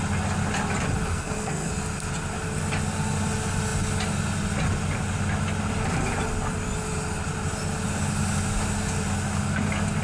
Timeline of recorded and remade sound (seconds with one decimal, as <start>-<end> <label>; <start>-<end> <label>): 0.0-1.1 recorded; 1.1-1.7 remade; 1.7-10.0 recorded